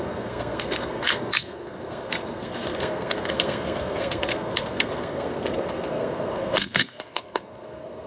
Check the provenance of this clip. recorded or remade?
remade